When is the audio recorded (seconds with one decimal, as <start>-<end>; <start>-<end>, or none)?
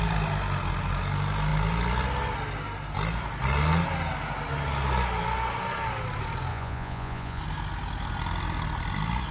0.0-6.5; 7.4-9.3